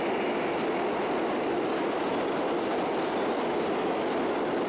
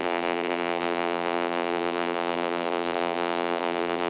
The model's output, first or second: second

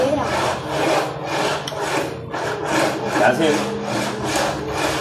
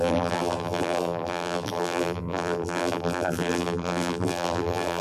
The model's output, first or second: second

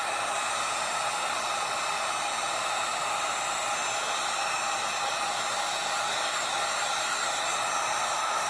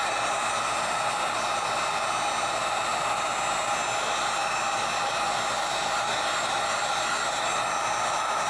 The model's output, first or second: first